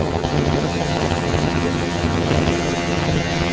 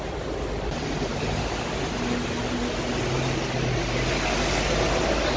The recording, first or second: second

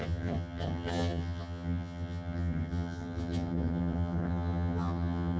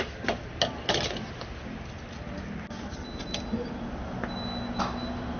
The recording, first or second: second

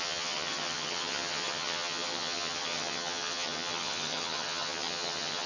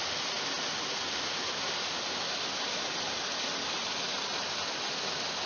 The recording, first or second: second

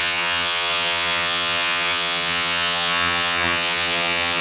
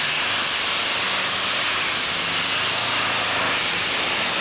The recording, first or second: second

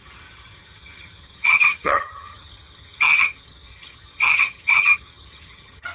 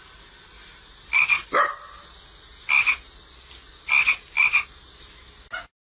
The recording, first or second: second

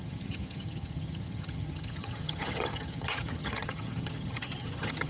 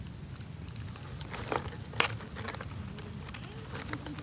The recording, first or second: second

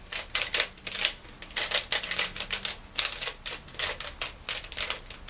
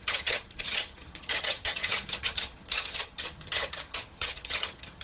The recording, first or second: first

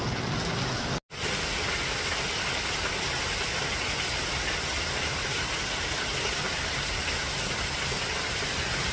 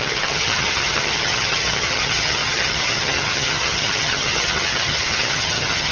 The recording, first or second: first